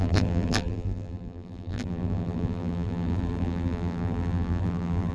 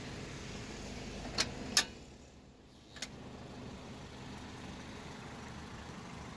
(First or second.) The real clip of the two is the second